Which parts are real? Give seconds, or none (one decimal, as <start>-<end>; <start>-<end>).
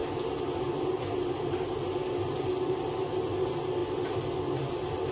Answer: 0.0-5.1